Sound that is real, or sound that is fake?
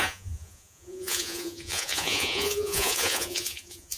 fake